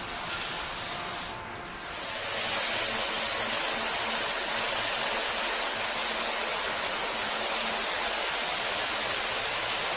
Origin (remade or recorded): recorded